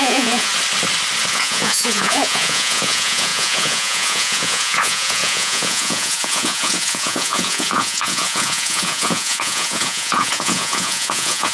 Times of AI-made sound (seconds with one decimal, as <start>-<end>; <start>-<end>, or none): 0.0-0.5; 1.3-11.5